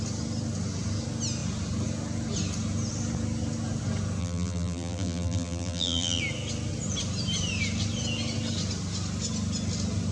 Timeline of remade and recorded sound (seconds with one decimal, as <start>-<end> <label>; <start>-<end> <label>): 0.0-4.2 recorded; 4.2-6.2 remade; 6.2-10.1 recorded